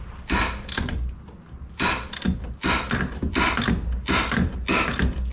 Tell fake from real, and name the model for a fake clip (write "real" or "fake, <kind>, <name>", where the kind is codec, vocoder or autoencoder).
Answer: real